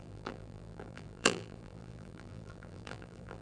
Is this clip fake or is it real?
fake